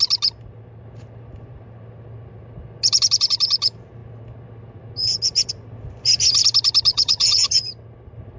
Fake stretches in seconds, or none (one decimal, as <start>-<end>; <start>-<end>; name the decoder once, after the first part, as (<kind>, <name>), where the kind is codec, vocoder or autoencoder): 6.9-7.6 (vocoder, HiFi-GAN)